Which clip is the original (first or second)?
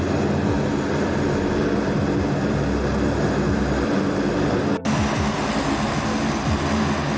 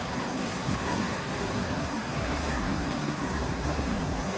first